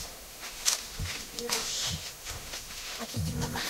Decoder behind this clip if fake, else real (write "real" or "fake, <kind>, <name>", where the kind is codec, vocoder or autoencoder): fake, autoencoder, DAC-VAE